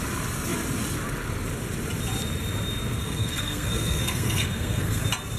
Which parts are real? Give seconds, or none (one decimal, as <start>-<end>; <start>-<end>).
0.0-3.0; 5.0-5.4